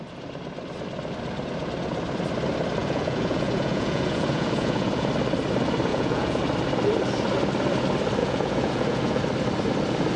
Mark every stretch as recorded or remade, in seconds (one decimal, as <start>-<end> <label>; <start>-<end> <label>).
0.0-2.8 recorded; 2.8-5.1 remade; 5.1-5.9 recorded; 5.9-6.4 remade; 6.4-8.2 recorded; 8.2-9.2 remade; 9.2-10.2 recorded